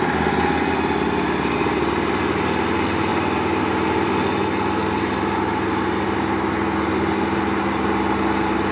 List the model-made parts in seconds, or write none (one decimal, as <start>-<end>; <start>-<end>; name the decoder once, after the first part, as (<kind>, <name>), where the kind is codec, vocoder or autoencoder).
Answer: none